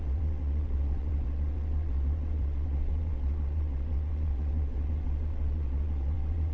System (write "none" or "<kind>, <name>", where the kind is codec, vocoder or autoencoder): vocoder, WaveNeXt